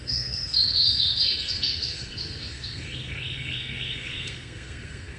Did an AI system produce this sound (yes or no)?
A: yes